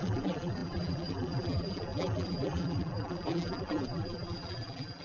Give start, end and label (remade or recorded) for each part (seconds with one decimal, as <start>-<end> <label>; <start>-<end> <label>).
0.0-5.0 remade

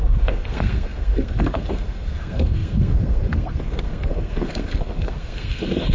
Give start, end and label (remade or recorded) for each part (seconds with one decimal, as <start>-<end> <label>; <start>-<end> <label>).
0.0-5.9 remade

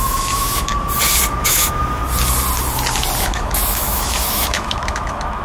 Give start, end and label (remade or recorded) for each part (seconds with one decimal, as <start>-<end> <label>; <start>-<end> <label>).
0.0-0.7 remade; 0.7-1.4 recorded; 1.4-2.0 remade; 2.0-3.2 recorded; 3.2-5.4 remade

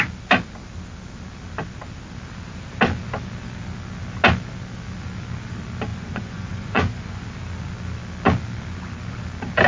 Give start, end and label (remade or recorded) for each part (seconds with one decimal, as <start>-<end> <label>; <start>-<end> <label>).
0.0-5.9 recorded; 5.9-7.2 remade; 7.2-9.7 recorded

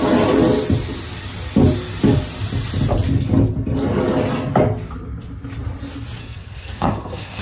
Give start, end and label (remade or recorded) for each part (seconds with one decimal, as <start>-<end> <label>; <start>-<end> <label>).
0.0-6.2 recorded; 6.2-7.4 remade

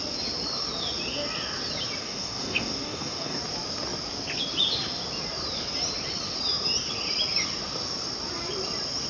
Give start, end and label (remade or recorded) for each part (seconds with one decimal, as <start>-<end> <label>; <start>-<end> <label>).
0.0-2.0 recorded; 2.0-3.4 remade; 3.4-9.1 recorded

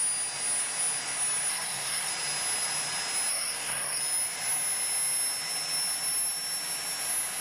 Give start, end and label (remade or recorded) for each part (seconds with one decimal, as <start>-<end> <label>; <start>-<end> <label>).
0.0-1.5 recorded; 1.5-2.1 remade; 2.1-3.3 recorded; 3.3-4.0 remade; 4.0-7.4 recorded

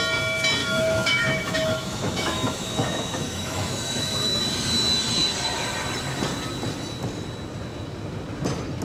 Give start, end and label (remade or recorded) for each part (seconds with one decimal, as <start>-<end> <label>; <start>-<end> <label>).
0.0-0.6 recorded; 0.6-4.4 remade; 4.4-8.8 recorded